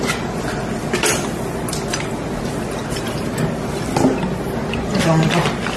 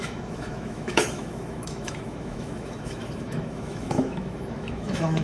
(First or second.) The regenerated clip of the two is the second